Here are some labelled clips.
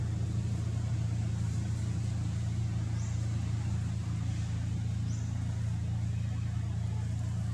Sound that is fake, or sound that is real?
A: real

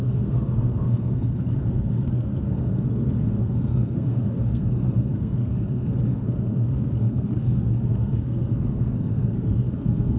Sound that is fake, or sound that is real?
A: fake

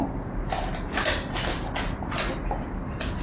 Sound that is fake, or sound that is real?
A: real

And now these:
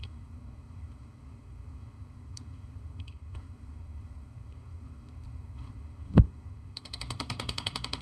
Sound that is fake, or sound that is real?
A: fake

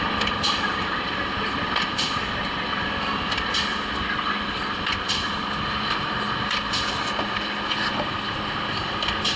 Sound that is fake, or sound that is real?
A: real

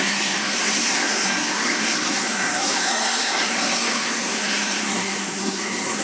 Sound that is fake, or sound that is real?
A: fake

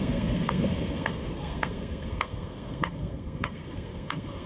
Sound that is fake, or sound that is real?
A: fake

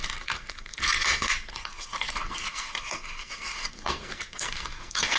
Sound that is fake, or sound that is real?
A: fake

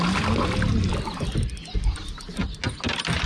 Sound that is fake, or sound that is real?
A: real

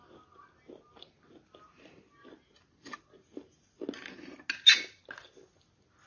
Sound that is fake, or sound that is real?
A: real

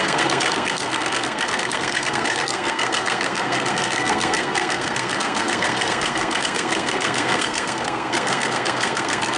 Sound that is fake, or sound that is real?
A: fake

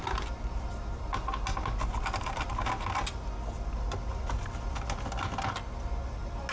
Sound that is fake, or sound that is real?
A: real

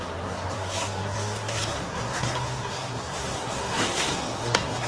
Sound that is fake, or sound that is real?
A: fake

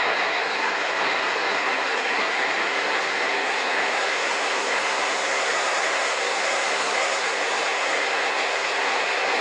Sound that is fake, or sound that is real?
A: fake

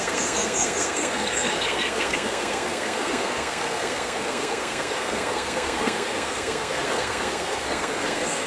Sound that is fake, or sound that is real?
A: fake